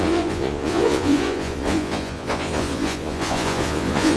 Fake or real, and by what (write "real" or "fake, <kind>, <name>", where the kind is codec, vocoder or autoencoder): fake, vocoder, Vocos